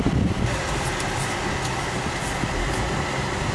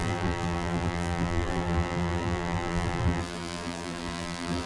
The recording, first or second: first